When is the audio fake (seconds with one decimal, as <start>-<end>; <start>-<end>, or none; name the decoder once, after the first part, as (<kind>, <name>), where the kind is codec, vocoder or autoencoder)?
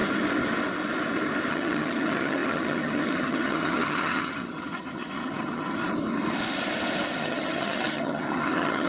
1.5-5.8 (vocoder, HiFi-GAN); 7.2-8.9